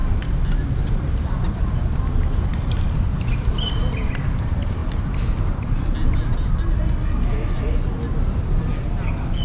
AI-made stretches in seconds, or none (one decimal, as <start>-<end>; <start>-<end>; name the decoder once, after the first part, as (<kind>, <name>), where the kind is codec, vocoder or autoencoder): 0.0-1.6 (vocoder, BigVGAN v2); 2.5-4.1